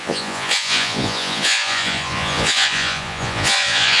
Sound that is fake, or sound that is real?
fake